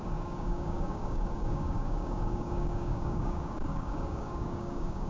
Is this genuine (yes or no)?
no